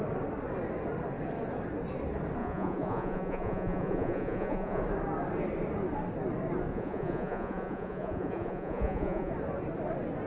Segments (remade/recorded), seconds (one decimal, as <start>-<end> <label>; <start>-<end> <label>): 0.0-2.4 recorded; 2.4-4.8 remade; 4.8-6.7 recorded; 6.7-9.3 remade; 9.3-10.3 recorded